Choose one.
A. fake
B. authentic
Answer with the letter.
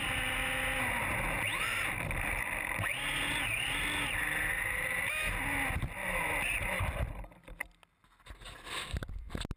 B